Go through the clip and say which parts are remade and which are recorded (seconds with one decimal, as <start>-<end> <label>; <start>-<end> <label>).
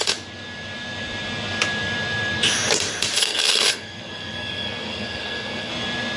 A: 0.0-3.2 recorded; 3.2-5.7 remade; 5.7-6.2 recorded